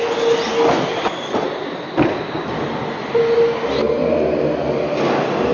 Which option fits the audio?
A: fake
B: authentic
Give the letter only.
B